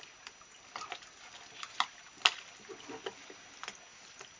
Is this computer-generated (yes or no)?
no